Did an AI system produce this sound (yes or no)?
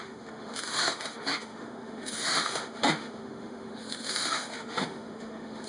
yes